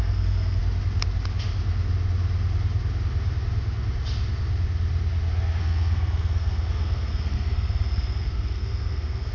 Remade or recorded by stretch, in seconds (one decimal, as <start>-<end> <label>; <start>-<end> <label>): 0.0-0.6 remade; 0.6-5.6 recorded; 5.6-9.3 remade